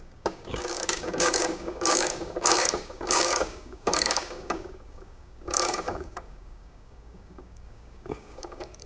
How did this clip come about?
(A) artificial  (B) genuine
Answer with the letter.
A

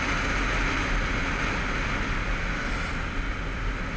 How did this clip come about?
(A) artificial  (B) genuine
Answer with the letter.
B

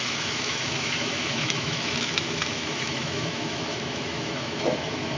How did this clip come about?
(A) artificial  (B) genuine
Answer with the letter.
A